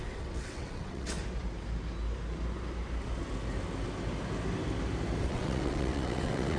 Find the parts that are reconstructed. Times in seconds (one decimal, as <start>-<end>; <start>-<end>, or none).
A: 0.0-1.2; 5.2-6.6